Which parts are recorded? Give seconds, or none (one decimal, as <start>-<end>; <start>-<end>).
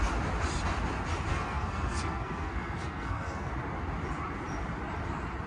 0.0-1.3; 3.5-5.5